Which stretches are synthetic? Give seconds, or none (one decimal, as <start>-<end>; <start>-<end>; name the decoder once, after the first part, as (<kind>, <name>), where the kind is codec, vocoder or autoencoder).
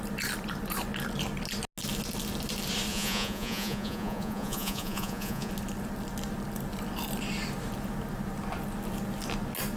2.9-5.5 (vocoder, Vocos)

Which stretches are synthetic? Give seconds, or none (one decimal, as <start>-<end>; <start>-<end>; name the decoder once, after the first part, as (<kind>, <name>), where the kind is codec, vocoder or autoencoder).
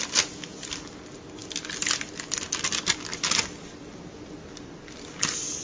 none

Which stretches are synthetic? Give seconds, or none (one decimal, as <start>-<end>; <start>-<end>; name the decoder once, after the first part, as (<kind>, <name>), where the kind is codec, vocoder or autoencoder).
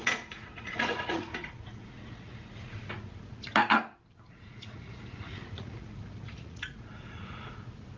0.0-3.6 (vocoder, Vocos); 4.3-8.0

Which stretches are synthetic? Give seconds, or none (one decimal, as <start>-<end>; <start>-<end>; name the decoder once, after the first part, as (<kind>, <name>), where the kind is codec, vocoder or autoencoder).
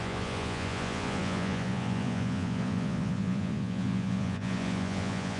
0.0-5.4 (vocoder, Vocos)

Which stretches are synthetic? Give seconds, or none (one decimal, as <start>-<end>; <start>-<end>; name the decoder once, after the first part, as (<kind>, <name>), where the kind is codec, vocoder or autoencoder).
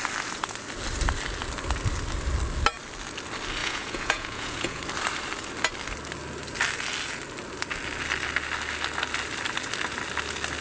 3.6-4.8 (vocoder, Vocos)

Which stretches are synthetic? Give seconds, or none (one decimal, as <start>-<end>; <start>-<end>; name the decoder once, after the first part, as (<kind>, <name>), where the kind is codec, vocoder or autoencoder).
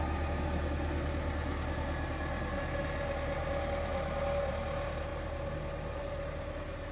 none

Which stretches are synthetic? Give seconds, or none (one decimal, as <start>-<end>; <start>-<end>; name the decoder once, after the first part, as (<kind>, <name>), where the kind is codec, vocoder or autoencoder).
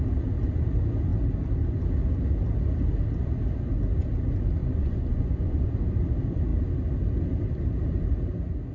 4.6-5.7 (vocoder, Vocos)